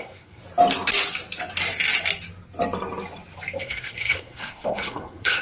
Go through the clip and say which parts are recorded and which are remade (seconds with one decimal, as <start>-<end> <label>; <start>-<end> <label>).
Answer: 0.0-0.4 remade; 0.4-3.6 recorded; 3.6-5.4 remade